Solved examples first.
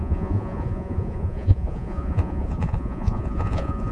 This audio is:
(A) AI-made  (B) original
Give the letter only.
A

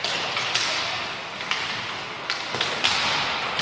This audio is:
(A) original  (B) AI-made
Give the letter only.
A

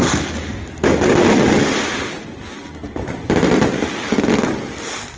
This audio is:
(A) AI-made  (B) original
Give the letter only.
B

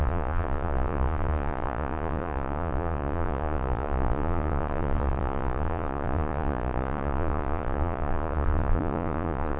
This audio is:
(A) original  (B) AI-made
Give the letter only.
B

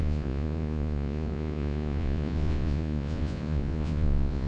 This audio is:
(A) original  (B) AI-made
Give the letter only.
B